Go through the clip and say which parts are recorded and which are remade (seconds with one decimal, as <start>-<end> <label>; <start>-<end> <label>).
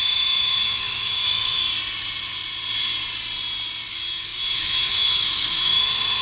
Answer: 0.0-1.6 remade; 1.6-3.9 recorded; 3.9-6.2 remade